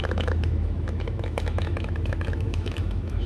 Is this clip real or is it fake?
fake